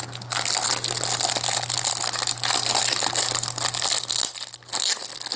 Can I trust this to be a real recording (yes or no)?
yes